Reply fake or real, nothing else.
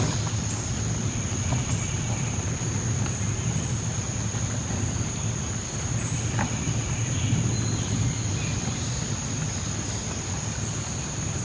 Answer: real